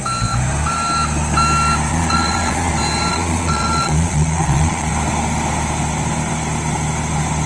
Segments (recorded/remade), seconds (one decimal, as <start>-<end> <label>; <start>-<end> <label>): 0.0-1.9 recorded; 1.9-2.7 remade; 2.7-3.1 recorded; 3.1-4.9 remade; 4.9-7.5 recorded